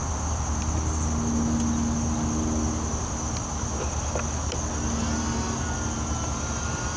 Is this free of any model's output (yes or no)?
yes